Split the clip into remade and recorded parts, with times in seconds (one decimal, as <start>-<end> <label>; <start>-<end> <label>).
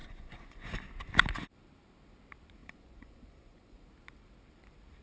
0.0-0.7 remade; 0.7-2.6 recorded; 2.6-3.9 remade; 3.9-5.0 recorded